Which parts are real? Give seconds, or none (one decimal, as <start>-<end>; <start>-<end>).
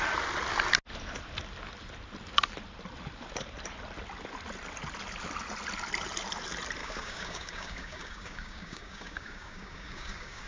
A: 0.0-6.8